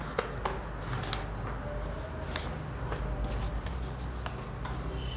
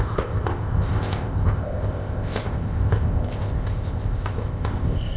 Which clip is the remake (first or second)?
second